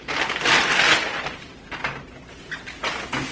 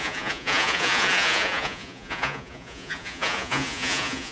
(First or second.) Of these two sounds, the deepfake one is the second